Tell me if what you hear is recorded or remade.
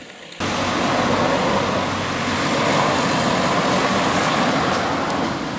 recorded